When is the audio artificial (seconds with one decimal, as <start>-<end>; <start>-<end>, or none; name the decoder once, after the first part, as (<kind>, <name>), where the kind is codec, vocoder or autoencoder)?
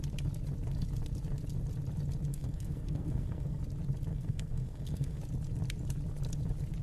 2.3-3.6 (codec, SNAC); 4.1-5.2